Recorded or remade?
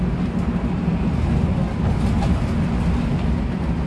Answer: recorded